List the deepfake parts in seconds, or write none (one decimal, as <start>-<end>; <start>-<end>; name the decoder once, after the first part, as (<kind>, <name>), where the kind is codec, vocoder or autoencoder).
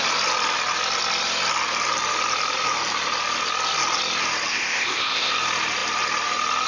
4.5-5.3 (codec, ZipCodec)